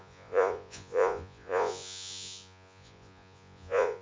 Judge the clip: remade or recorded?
remade